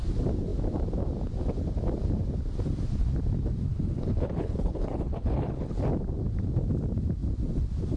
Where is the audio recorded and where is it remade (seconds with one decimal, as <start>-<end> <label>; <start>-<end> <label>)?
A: 0.0-3.7 recorded; 3.7-5.8 remade; 5.8-8.0 recorded